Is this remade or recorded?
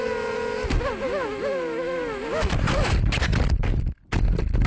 recorded